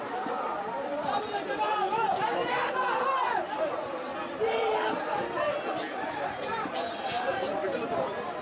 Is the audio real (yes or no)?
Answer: yes